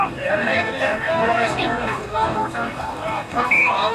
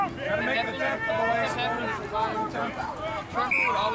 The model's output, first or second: first